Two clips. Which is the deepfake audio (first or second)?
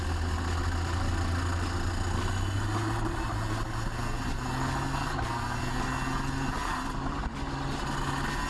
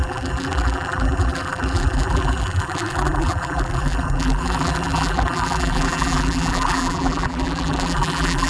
second